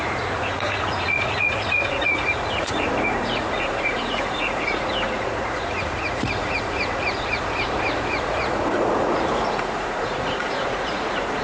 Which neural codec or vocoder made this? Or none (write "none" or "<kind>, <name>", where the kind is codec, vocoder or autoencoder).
vocoder, Vocos